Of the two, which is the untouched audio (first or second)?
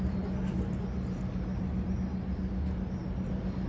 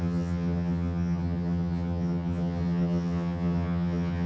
first